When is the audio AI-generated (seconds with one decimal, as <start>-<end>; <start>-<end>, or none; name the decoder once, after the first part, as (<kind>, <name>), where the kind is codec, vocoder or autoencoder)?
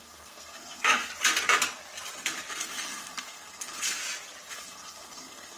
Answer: 0.0-1.1 (codec, SNAC); 2.5-4.0; 4.5-5.6